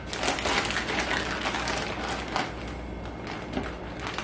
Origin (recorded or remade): recorded